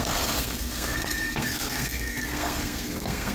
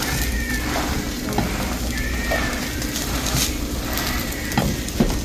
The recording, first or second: second